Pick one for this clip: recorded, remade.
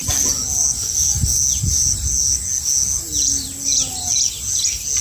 recorded